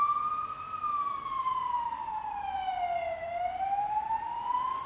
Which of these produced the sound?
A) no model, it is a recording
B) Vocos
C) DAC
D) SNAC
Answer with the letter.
A